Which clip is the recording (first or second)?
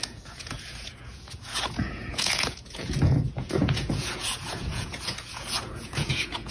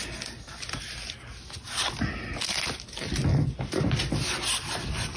second